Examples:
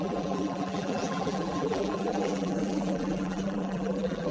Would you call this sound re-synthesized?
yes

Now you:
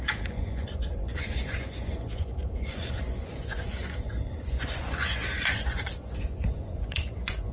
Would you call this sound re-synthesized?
yes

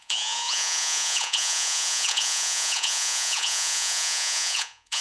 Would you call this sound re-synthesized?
yes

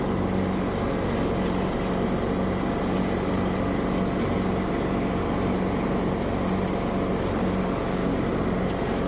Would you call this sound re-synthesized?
no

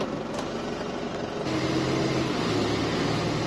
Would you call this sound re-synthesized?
no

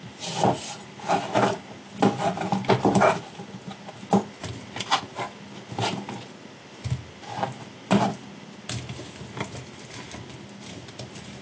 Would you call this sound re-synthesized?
no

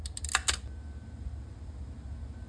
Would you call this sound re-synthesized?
no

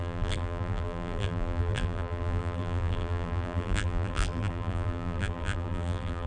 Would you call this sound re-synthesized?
yes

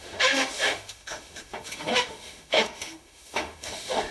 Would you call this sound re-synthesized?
yes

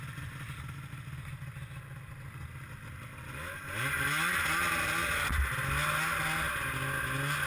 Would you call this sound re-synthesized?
no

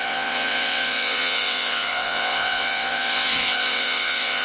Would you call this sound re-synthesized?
yes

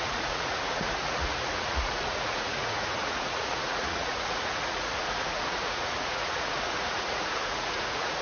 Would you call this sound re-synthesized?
yes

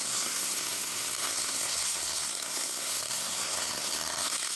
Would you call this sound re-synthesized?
yes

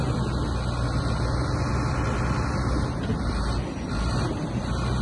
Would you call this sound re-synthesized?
no